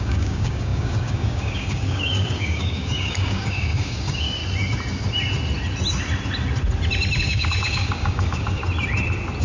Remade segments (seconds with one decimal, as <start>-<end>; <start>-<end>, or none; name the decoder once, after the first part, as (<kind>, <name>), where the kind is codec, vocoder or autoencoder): 0.0-4.4 (codec, DAC); 7.2-8.6